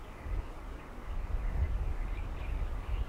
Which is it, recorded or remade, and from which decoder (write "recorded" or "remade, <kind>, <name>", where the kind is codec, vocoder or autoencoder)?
remade, codec, DAC